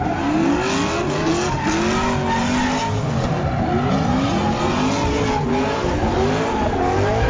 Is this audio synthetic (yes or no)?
no